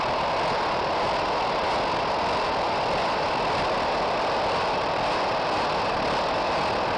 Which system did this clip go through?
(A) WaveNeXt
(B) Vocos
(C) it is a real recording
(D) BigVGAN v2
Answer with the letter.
C